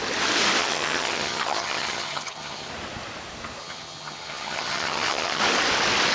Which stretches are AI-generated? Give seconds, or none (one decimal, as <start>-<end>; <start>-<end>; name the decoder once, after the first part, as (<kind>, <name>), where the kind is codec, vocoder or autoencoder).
0.6-2.7 (vocoder, HiFi-GAN); 3.6-5.4